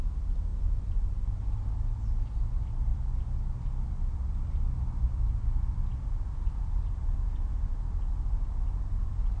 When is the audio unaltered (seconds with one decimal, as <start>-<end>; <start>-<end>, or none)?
0.0-9.4